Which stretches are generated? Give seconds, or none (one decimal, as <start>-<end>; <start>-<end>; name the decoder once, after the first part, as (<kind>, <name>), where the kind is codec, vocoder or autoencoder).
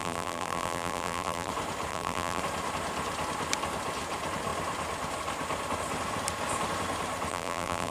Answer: 0.0-1.5 (vocoder, BigVGAN v2); 1.9-2.4; 7.3-7.9